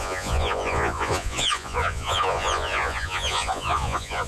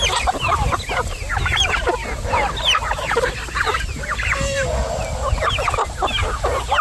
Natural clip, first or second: second